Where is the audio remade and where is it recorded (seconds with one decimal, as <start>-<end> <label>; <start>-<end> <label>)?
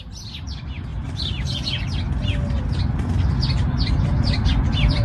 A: 0.0-0.9 remade; 0.9-3.9 recorded; 3.9-5.0 remade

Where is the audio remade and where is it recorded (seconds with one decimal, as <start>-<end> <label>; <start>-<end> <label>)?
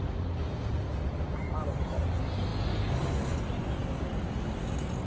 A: 0.0-0.9 recorded; 0.9-1.5 remade; 1.5-5.1 recorded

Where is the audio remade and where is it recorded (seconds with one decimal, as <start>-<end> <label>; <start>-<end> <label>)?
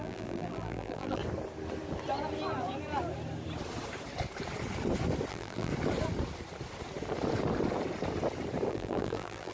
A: 0.0-1.2 remade; 1.2-5.3 recorded; 5.3-5.7 remade; 5.7-8.7 recorded; 8.7-9.5 remade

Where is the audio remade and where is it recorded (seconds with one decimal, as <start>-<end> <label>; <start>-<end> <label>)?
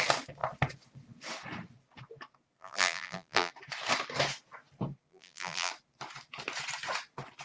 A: 0.0-2.6 recorded; 2.6-3.5 remade; 3.5-5.1 recorded; 5.1-5.7 remade; 5.7-7.4 recorded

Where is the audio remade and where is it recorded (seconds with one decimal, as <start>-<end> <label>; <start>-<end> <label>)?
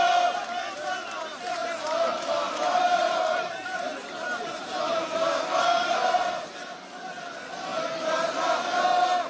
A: 0.0-1.6 recorded; 1.6-6.5 remade; 6.5-9.3 recorded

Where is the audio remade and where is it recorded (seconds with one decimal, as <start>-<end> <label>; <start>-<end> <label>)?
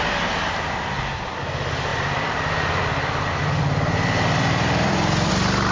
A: 0.0-1.9 recorded; 1.9-5.3 remade; 5.3-5.7 recorded